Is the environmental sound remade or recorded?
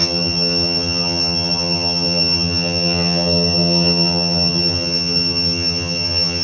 remade